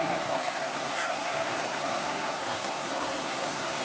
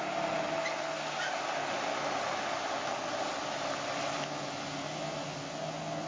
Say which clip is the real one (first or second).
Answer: second